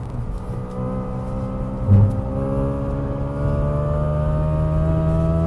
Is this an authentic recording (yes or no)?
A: yes